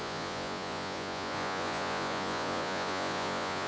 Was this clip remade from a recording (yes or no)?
yes